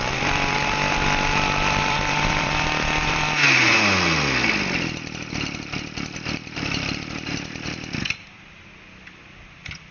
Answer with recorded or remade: remade